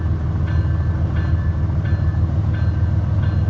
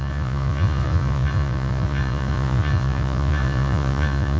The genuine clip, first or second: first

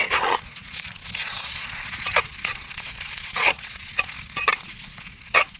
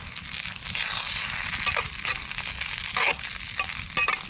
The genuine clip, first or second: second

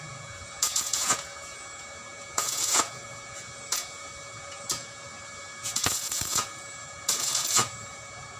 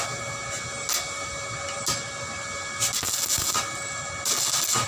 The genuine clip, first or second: second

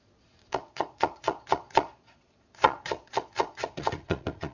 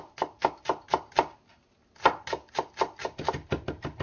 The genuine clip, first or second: second